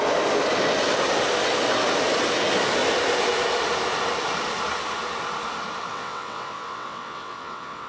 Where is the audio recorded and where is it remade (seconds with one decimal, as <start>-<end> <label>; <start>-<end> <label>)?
0.0-5.9 recorded; 5.9-7.9 remade